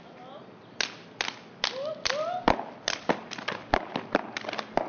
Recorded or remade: recorded